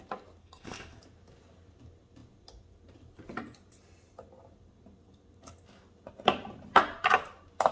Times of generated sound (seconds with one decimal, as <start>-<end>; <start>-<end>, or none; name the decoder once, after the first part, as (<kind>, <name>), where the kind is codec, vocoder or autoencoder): 0.4-1.0 (codec, SNAC)